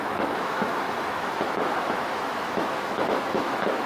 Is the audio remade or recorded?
remade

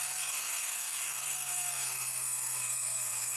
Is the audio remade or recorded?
remade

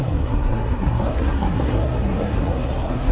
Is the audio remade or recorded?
remade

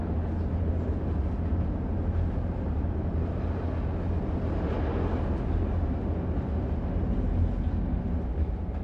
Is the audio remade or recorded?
recorded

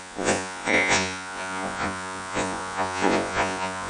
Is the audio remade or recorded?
remade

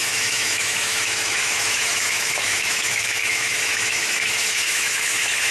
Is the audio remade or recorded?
remade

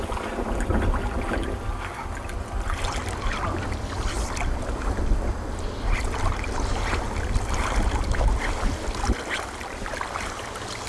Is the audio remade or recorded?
recorded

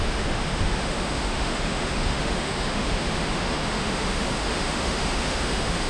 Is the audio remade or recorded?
remade